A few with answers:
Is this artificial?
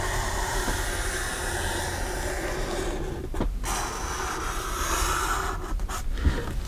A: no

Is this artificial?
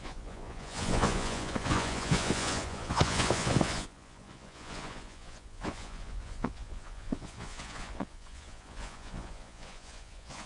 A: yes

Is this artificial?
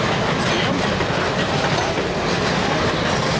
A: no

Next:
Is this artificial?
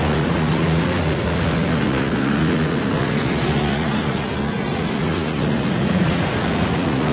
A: yes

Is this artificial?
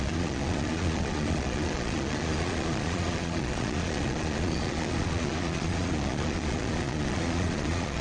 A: yes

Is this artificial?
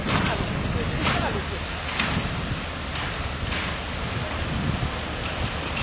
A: no